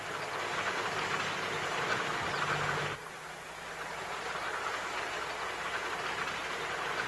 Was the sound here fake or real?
real